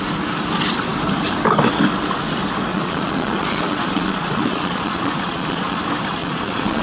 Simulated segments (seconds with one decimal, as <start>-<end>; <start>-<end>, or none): 2.7-5.8; 6.2-6.8